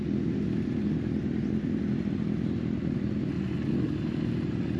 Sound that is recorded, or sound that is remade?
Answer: recorded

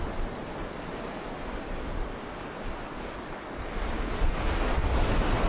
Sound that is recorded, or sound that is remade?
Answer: recorded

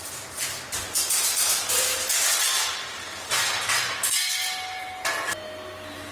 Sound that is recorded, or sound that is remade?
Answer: recorded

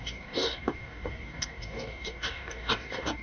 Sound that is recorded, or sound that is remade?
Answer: remade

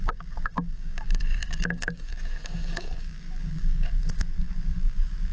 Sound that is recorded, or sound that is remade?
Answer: remade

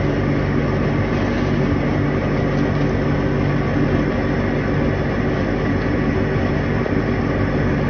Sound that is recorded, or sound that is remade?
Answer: recorded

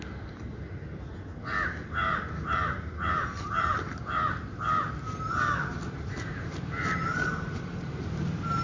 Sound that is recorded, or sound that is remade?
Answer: recorded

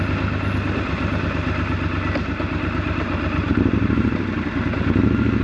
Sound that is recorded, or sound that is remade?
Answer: recorded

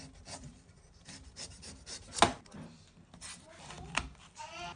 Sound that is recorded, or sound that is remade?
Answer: recorded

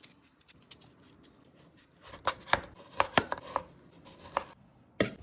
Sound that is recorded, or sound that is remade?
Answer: recorded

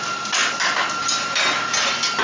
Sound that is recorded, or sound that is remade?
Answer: recorded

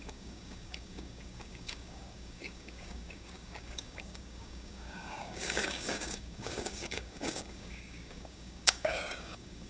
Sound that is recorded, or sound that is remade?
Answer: remade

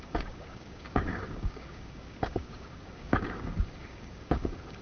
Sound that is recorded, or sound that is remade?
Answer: remade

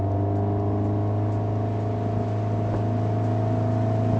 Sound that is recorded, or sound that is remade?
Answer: recorded